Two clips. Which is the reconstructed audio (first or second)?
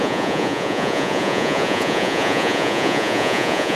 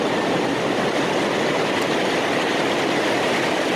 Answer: first